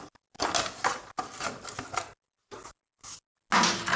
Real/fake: real